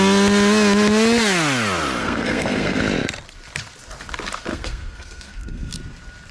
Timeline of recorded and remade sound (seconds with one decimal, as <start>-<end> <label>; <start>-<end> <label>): 0.0-2.0 recorded; 2.0-2.8 remade; 2.8-4.5 recorded; 4.5-5.7 remade; 5.7-6.3 recorded